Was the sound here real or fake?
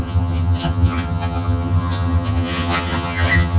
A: fake